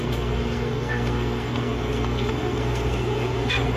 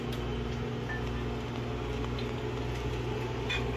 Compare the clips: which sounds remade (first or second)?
first